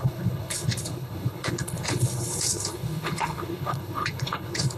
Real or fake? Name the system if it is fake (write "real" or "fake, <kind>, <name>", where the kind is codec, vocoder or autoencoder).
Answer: fake, codec, HILCodec